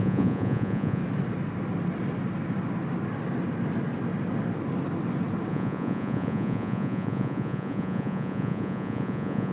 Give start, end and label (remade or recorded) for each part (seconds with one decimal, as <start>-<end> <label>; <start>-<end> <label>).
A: 0.0-1.0 remade; 1.0-5.5 recorded; 5.5-9.5 remade